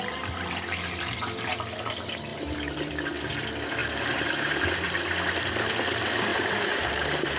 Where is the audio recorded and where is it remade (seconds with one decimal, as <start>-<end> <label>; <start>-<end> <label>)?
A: 0.0-2.3 recorded; 2.3-2.9 remade; 2.9-3.8 recorded; 3.8-4.6 remade; 4.6-6.3 recorded; 6.3-7.4 remade